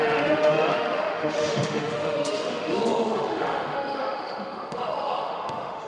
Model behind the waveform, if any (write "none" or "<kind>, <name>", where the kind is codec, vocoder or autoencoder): autoencoder, DAC-VAE